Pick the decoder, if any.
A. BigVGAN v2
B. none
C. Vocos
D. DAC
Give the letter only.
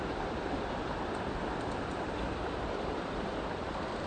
A